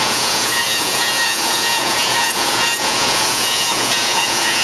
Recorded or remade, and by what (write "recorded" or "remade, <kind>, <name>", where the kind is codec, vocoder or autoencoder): remade, vocoder, Vocos